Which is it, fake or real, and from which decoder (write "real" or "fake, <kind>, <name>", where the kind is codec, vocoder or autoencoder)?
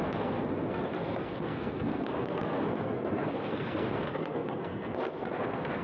fake, codec, SNAC